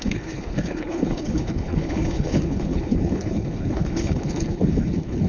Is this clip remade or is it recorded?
remade